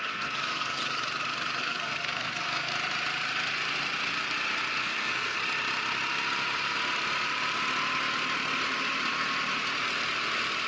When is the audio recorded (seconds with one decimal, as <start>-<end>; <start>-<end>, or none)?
0.8-1.6; 2.7-4.8; 5.4-10.7